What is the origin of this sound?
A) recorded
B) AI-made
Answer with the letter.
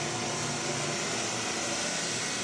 A